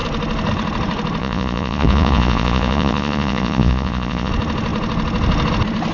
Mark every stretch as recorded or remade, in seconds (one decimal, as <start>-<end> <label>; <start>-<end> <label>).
0.0-1.2 recorded; 1.2-4.3 remade; 4.3-5.9 recorded